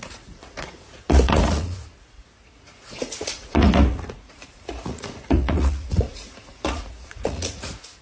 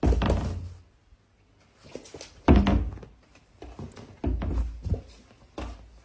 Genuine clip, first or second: second